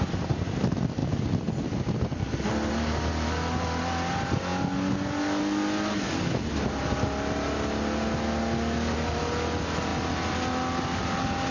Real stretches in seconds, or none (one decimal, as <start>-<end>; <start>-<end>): 0.0-11.5